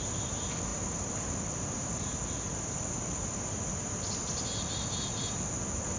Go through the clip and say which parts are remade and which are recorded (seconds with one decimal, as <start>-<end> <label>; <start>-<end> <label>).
0.0-2.2 remade; 2.2-6.0 recorded